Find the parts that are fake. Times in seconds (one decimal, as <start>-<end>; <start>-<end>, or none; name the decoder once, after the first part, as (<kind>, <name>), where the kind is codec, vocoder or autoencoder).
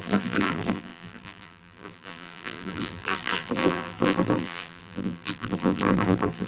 0.0-6.5 (vocoder, BigVGAN v2)